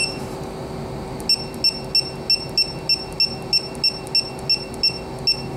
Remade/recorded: recorded